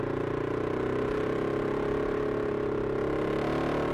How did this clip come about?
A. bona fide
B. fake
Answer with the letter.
A